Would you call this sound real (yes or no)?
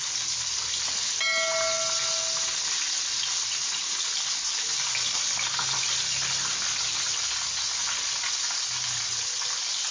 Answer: yes